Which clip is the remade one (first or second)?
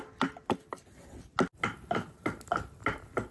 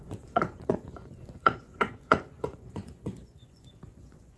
second